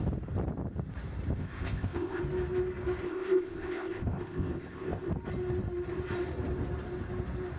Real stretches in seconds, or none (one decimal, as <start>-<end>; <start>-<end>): 0.0-1.4; 2.2-3.0; 5.1-7.6